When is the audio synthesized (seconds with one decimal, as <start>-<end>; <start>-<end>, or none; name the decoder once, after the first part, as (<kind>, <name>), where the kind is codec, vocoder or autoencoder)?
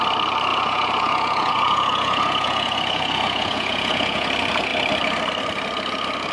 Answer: 0.5-4.3 (vocoder, Vocos)